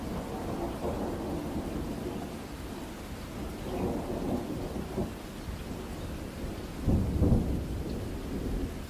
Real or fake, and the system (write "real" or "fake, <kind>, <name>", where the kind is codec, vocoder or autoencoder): real